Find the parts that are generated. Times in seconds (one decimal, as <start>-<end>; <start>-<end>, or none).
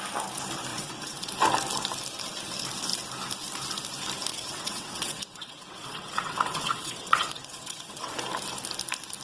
0.7-1.3; 4.3-8.1